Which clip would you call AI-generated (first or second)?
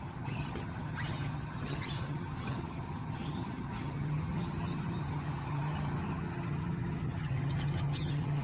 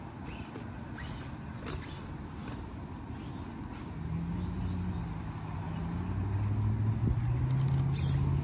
first